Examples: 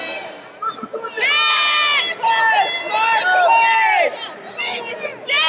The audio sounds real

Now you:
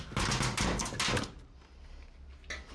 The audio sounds real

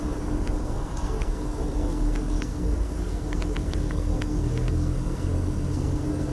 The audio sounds fake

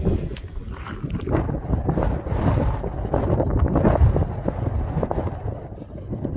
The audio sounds real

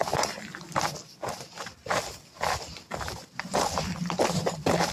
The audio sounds real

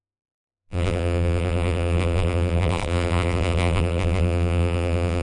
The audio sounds fake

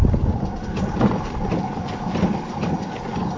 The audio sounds real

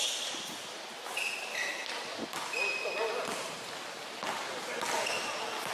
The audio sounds real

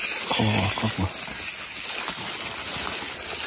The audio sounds real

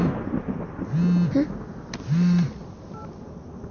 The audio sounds real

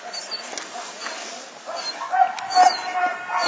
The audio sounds real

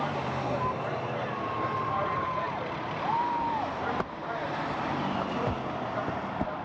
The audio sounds fake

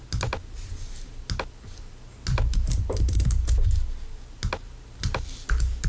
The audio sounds real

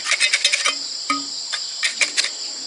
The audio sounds real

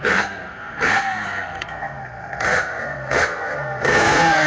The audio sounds fake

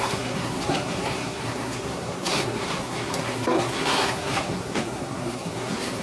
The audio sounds fake